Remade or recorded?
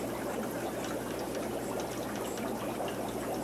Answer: recorded